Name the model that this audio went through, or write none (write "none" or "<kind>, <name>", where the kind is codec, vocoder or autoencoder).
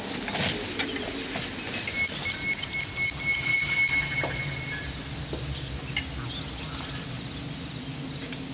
none